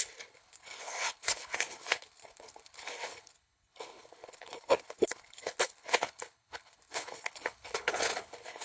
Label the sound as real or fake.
fake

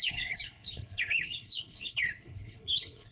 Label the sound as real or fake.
fake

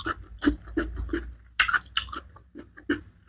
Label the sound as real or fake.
real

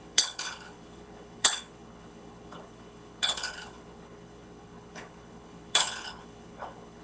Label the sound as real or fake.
fake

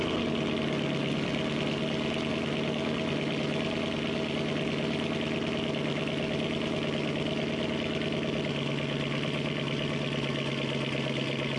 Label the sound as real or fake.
real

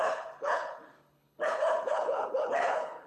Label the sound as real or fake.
fake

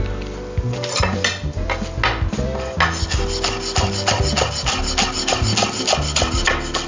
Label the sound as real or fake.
real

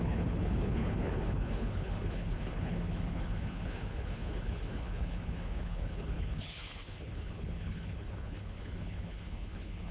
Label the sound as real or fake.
fake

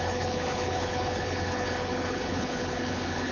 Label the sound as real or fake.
fake